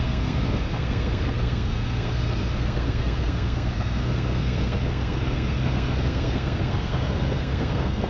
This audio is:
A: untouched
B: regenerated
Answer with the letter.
B